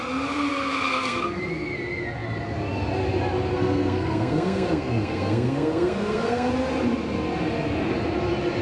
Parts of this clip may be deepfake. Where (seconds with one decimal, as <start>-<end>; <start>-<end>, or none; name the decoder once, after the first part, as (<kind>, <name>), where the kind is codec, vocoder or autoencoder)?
0.5-1.4 (codec, SNAC); 3.5-6.5